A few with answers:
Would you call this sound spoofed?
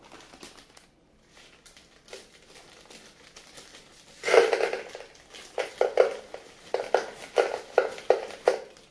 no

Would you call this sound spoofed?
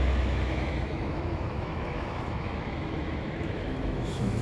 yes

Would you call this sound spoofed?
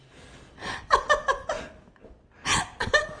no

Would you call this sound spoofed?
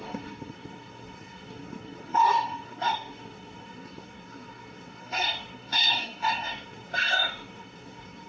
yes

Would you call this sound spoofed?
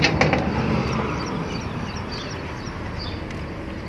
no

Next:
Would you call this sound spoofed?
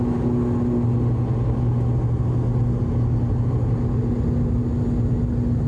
no